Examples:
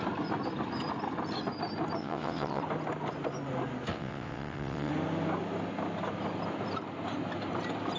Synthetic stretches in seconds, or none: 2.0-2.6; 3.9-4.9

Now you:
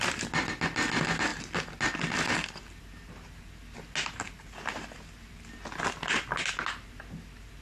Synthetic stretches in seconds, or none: none

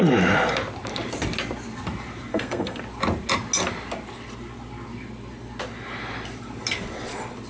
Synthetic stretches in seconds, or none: 2.3-2.8

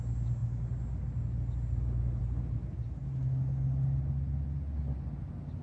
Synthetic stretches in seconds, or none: none